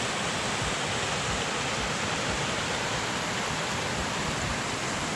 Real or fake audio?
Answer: real